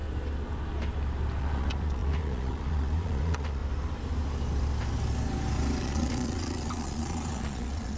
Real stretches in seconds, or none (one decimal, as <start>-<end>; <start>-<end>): 0.0-1.4; 3.6-5.8